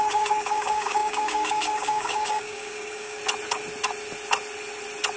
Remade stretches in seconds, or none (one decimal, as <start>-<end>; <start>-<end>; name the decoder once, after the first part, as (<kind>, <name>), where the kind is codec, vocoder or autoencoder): 0.0-3.2 (codec, DAC)